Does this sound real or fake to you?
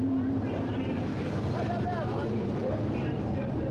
fake